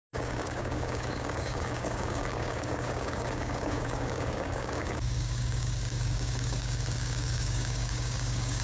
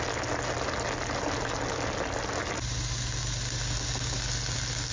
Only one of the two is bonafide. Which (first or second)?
second